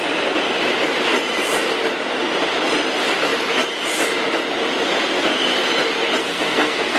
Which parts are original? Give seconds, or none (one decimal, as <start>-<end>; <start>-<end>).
0.0-6.2